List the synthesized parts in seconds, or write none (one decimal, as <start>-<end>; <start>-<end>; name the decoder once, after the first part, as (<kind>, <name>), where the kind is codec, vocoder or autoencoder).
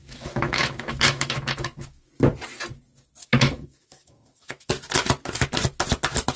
0.0-2.1 (autoencoder, DAC-VAE); 3.2-4.7